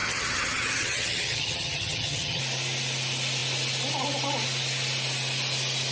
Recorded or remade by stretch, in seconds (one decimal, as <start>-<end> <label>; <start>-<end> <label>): 0.0-2.4 remade; 2.4-5.9 recorded